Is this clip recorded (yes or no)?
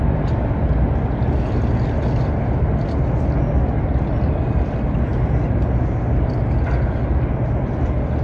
yes